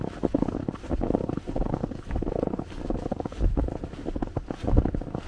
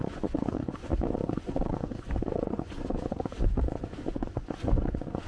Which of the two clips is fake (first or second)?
second